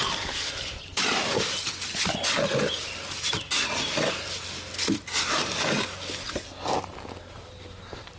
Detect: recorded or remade recorded